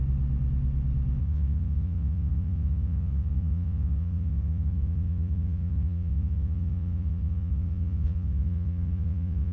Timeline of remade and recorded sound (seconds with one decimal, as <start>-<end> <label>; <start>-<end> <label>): 0.0-1.2 recorded; 1.2-9.5 remade